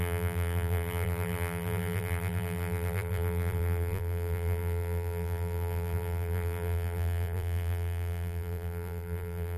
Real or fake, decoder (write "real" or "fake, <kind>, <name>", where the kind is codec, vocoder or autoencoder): fake, vocoder, BigVGAN v2